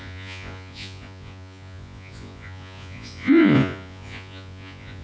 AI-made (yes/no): yes